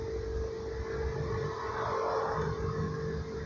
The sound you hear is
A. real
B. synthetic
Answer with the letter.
A